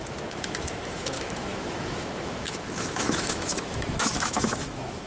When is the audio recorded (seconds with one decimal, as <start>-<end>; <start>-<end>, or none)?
none